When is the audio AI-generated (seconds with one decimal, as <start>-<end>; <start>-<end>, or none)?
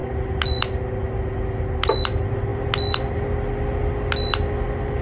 none